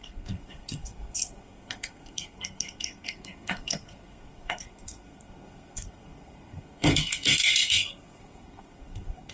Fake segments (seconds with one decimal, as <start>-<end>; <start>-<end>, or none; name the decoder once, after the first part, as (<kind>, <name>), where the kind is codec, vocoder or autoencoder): 0.0-9.3 (codec, SNAC)